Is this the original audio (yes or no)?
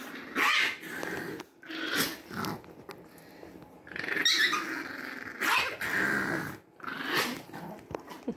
yes